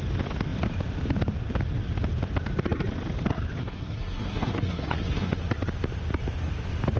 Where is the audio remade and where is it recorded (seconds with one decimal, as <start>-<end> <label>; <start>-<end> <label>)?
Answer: 0.0-3.6 recorded; 3.6-5.4 remade; 5.4-7.0 recorded